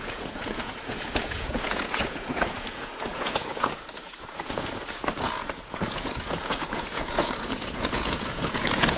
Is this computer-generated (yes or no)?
yes